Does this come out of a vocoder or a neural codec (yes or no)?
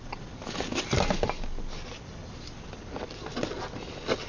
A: no